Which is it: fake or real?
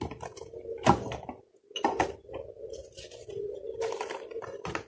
real